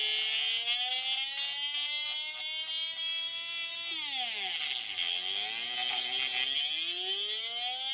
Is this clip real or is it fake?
real